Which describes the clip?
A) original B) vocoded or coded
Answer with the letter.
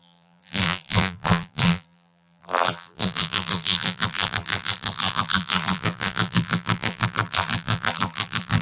B